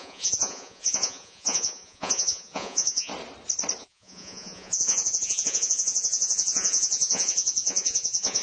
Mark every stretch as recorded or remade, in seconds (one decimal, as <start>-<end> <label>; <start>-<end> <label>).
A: 0.0-3.1 remade; 3.1-3.8 recorded; 3.8-8.4 remade